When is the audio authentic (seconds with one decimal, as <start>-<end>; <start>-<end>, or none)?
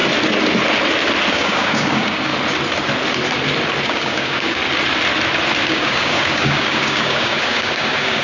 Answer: 0.0-1.3; 2.3-3.8; 4.6-5.6